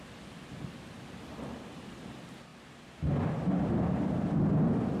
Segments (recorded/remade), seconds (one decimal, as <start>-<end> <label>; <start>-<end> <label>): 0.0-5.0 recorded